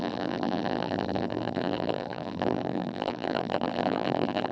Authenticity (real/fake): fake